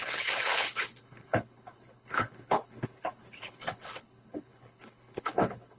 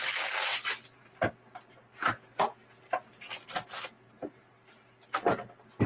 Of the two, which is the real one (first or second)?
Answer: second